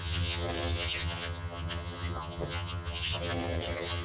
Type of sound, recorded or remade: remade